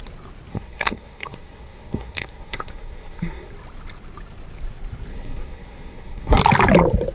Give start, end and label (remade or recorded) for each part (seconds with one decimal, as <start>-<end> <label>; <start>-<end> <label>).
0.0-0.5 recorded; 0.5-3.5 remade; 3.5-5.1 recorded; 5.1-6.4 remade; 6.4-7.1 recorded